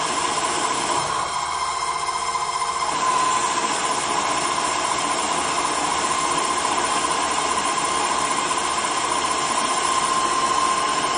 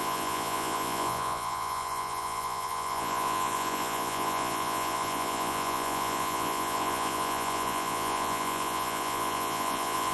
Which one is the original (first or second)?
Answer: first